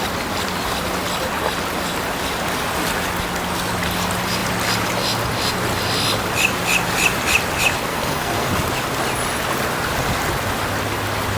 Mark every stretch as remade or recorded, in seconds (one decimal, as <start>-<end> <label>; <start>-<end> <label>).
0.0-7.9 recorded; 7.9-8.5 remade; 8.5-11.4 recorded